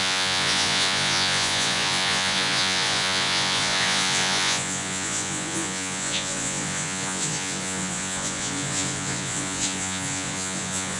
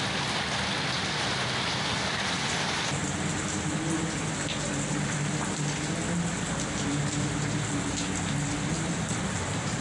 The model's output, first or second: first